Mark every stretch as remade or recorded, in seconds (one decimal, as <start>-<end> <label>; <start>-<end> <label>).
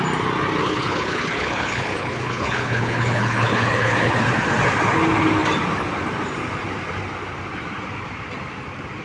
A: 0.0-0.6 recorded; 0.6-4.2 remade; 4.2-9.0 recorded